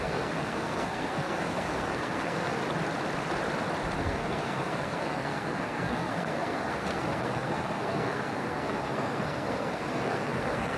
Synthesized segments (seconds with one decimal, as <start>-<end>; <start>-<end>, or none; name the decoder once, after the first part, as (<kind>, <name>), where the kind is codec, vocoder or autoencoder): 0.0-2.6 (codec, SNAC); 4.0-10.8